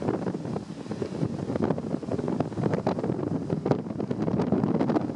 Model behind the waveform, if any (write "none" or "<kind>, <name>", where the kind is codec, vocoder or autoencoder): none